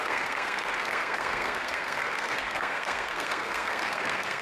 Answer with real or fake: fake